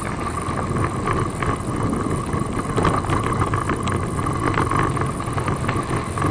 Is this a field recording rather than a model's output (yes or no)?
yes